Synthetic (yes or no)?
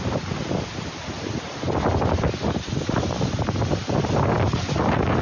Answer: no